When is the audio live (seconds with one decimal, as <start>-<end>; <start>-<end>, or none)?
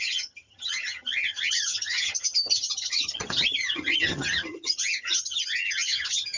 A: none